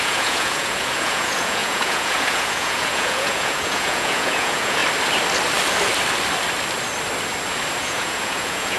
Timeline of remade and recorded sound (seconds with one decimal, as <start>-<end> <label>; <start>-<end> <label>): 0.0-4.8 remade; 4.8-7.8 recorded; 7.8-8.8 remade